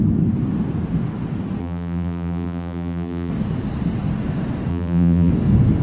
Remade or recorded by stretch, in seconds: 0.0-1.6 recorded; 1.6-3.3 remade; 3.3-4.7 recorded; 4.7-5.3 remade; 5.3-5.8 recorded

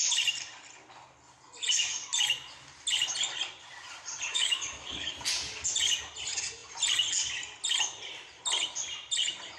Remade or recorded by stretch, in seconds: 0.0-4.3 recorded; 4.3-5.1 remade; 5.1-9.6 recorded

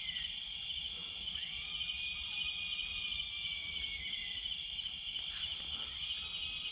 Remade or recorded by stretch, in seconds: 0.0-1.0 recorded; 1.0-4.5 remade; 4.5-6.7 recorded

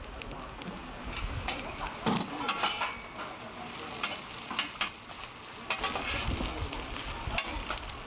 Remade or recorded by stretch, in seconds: 0.0-0.8 recorded; 0.8-5.0 remade; 5.0-8.1 recorded

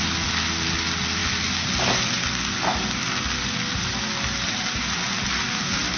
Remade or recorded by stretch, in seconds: 0.0-6.0 recorded

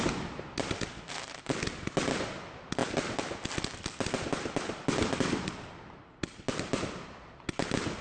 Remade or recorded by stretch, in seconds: 0.0-8.0 recorded